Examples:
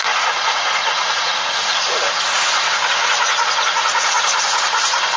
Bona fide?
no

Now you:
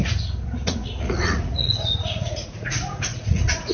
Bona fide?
no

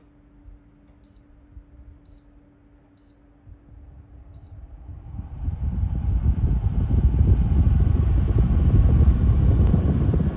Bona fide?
yes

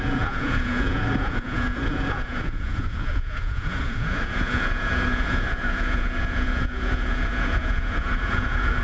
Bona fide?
no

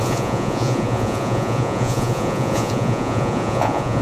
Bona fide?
no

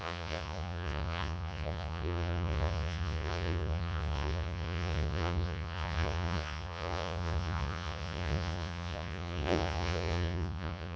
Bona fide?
no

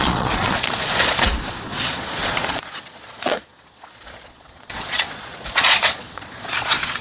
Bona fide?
no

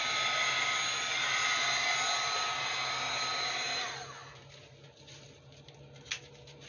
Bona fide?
yes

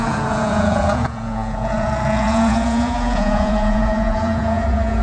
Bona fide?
no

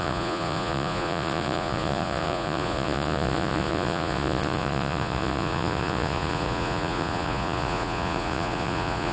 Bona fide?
no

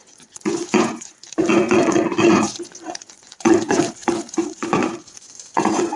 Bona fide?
no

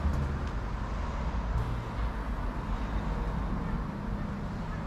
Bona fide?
yes